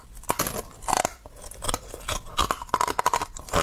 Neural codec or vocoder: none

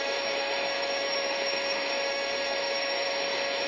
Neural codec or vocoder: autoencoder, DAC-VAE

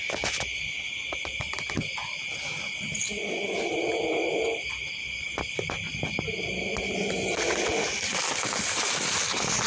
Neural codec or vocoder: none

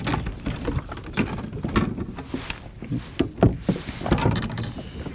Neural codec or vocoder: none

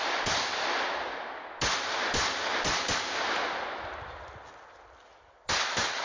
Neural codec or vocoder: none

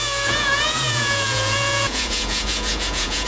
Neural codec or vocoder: vocoder, Vocos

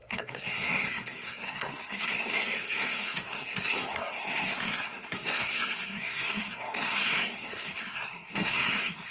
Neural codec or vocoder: codec, SNAC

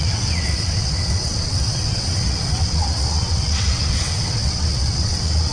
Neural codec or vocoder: vocoder, WaveNeXt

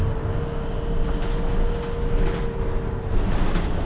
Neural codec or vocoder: none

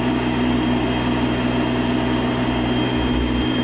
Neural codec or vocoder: none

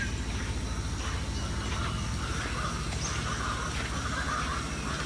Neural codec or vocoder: none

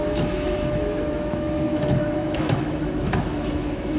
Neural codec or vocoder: autoencoder, DAC-VAE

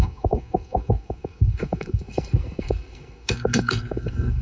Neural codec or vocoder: codec, SNAC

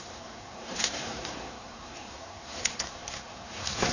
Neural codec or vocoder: codec, SNAC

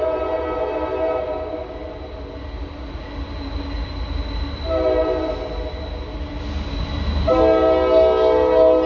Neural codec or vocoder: none